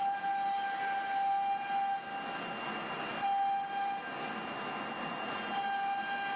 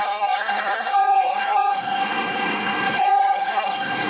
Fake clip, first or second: second